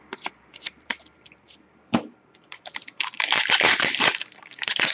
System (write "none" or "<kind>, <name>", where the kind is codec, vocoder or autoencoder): vocoder, BigVGAN v2